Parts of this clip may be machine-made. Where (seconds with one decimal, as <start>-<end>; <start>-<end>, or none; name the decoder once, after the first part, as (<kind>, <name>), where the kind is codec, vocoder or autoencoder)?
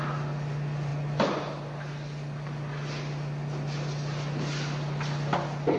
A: none